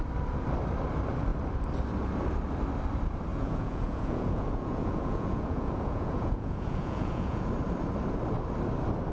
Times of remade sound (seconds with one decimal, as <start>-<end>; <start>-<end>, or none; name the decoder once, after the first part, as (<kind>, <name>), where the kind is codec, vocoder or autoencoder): 3.3-7.5 (vocoder, Vocos)